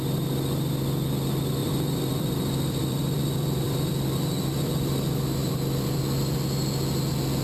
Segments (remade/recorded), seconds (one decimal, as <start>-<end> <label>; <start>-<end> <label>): 0.0-1.6 recorded; 1.6-6.0 remade; 6.0-7.4 recorded